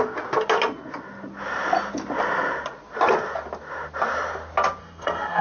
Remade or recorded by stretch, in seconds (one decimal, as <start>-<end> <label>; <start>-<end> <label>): 0.0-4.8 recorded; 4.8-5.4 remade